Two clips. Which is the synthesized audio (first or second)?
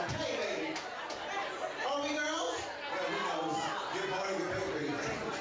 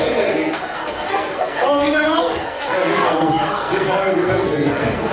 second